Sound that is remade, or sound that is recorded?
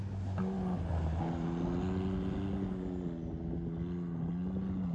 recorded